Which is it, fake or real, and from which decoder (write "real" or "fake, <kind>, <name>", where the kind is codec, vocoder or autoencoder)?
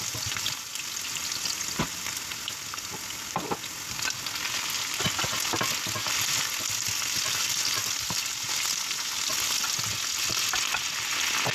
real